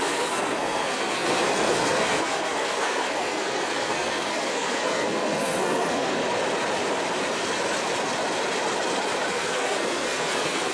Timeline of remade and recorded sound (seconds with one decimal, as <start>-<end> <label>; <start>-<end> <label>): 0.0-6.2 remade; 6.2-9.3 recorded; 9.3-10.7 remade